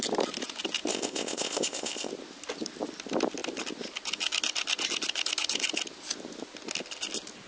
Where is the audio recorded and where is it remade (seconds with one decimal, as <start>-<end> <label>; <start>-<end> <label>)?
0.0-0.9 recorded; 0.9-2.1 remade; 2.1-7.5 recorded